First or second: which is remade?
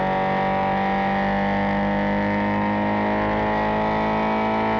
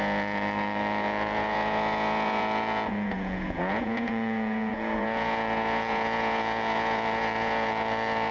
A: second